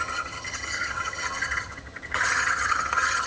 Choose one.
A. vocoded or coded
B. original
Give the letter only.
A